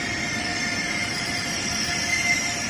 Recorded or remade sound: remade